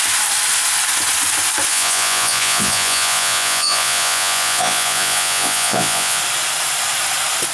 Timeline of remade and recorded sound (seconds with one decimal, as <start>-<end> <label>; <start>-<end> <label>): 0.0-1.7 recorded; 1.7-6.2 remade; 6.2-7.5 recorded